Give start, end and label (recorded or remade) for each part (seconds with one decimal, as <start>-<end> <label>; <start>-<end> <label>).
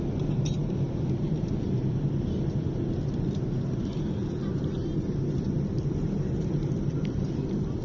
0.0-7.8 recorded